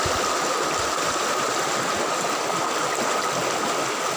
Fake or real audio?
real